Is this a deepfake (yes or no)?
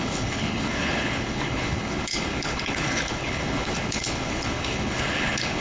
yes